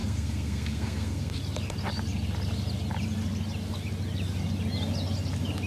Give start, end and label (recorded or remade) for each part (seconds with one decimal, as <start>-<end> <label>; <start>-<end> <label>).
0.0-1.4 remade; 1.4-5.7 recorded